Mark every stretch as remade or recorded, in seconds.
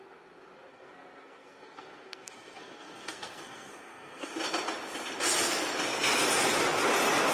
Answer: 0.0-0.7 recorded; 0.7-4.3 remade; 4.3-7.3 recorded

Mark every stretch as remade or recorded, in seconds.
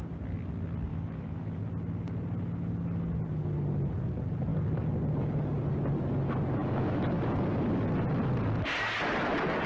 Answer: 0.0-0.9 recorded; 0.9-1.6 remade; 1.6-6.6 recorded; 6.6-7.2 remade; 7.2-9.7 recorded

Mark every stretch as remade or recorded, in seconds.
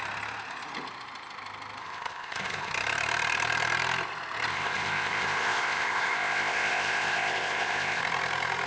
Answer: 0.0-1.8 recorded; 1.8-2.7 remade; 2.7-4.5 recorded; 4.5-8.0 remade; 8.0-8.7 recorded